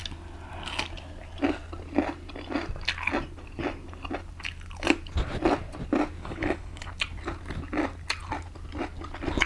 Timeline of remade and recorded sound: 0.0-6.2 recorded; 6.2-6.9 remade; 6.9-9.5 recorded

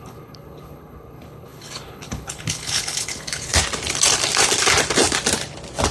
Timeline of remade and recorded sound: 0.0-3.5 remade; 3.5-5.9 recorded

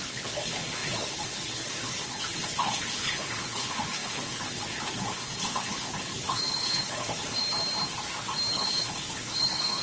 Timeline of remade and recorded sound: 0.0-7.4 remade; 7.4-8.5 recorded; 8.5-9.8 remade